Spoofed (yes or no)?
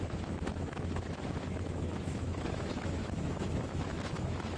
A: yes